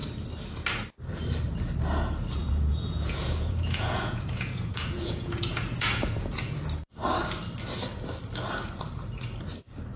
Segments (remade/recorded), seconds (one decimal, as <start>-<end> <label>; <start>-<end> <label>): 0.0-2.4 recorded; 2.4-6.6 remade; 6.6-10.0 recorded